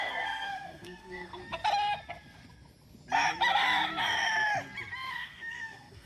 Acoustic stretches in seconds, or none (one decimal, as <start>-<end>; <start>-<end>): 1.4-5.1